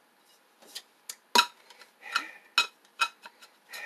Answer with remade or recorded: recorded